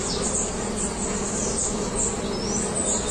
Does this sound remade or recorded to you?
recorded